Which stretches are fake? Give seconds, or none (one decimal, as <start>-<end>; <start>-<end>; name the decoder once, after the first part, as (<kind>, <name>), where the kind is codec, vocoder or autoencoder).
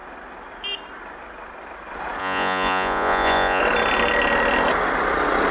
2.2-3.6 (vocoder, Vocos)